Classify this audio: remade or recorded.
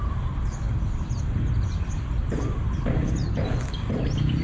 remade